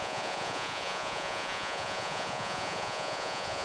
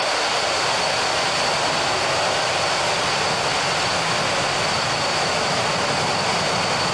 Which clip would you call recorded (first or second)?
second